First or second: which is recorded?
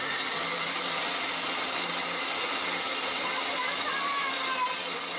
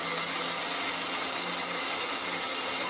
second